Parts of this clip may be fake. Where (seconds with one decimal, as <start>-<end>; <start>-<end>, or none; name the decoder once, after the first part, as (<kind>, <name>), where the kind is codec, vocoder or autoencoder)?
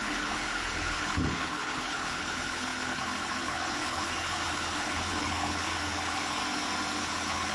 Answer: 0.0-6.4 (codec, HILCodec); 7.0-7.5